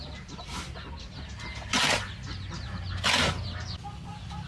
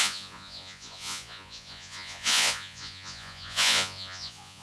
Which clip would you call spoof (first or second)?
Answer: second